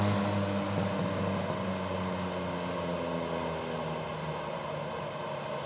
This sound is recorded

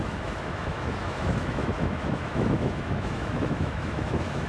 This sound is remade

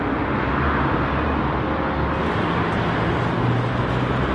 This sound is recorded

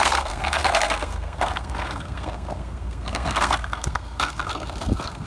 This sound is remade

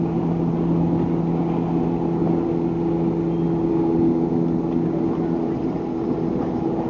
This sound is recorded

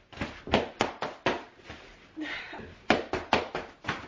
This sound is recorded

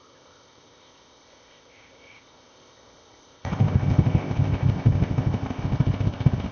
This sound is remade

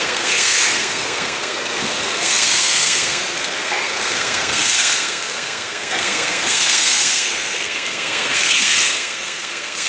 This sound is remade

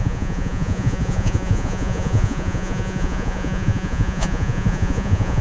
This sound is remade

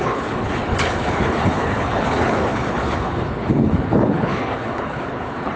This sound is remade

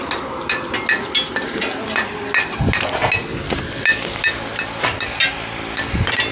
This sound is recorded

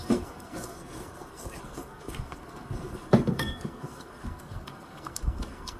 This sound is remade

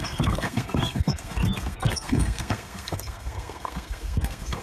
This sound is remade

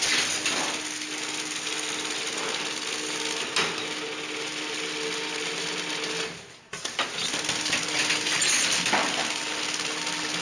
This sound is recorded